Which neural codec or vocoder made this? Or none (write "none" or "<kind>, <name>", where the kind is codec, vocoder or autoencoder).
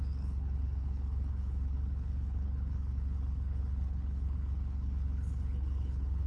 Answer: codec, HILCodec